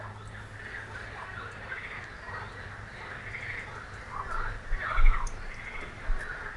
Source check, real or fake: real